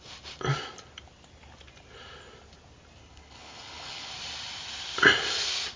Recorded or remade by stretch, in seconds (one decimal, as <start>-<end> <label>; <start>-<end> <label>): 0.0-3.0 recorded; 3.0-4.1 remade; 4.1-5.8 recorded

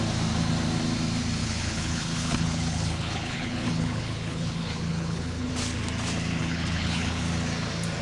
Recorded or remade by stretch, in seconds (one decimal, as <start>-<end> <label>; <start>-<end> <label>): 0.0-1.4 recorded; 1.4-5.5 remade; 5.5-6.4 recorded; 6.4-7.2 remade; 7.2-8.0 recorded